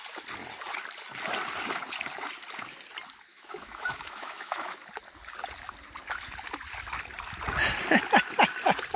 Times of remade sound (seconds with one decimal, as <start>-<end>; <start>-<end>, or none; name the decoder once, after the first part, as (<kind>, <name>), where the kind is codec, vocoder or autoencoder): 3.3-4.9 (autoencoder, DAC-VAE)